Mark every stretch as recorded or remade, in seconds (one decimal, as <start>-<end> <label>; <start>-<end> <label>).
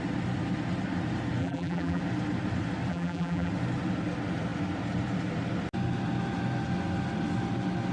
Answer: 0.0-1.4 recorded; 1.4-2.0 remade; 2.0-2.9 recorded; 2.9-3.5 remade; 3.5-7.9 recorded